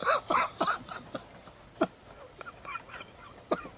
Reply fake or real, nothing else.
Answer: real